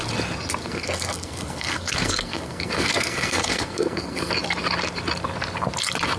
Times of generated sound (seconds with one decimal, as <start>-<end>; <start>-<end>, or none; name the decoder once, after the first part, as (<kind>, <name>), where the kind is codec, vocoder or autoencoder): 0.6-4.3 (codec, SNAC)